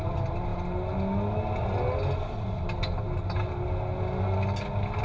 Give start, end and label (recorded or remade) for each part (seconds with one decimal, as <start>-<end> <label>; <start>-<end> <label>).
0.0-5.0 recorded